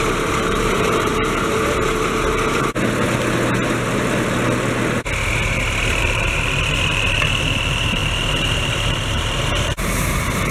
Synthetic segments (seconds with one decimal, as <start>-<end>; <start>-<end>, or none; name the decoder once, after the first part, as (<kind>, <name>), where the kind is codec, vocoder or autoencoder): 0.0-1.1 (vocoder, BigVGAN v2); 6.0-10.5